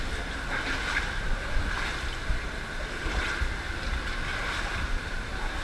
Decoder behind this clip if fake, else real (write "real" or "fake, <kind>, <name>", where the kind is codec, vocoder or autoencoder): real